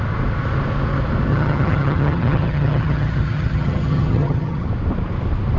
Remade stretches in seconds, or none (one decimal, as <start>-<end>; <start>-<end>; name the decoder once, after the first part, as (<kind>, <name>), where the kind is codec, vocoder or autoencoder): 1.3-4.7 (vocoder, HiFi-GAN)